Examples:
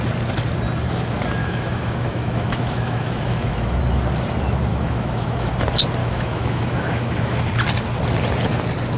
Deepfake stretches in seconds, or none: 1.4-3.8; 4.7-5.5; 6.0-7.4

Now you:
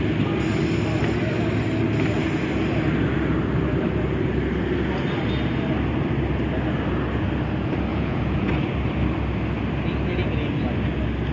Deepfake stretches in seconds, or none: 7.9-8.5

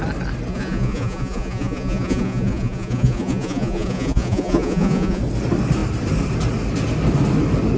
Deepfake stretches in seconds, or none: 0.5-5.2

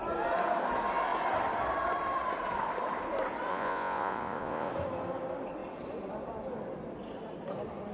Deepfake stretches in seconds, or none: 3.5-4.7

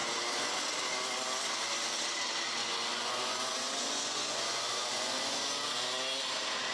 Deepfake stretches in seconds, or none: 2.6-5.4

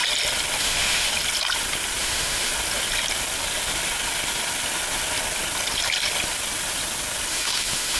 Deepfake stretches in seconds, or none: 0.6-1.1; 2.0-2.5; 7.3-8.0

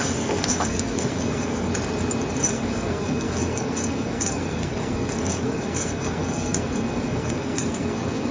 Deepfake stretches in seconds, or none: 0.0-1.7; 2.5-8.3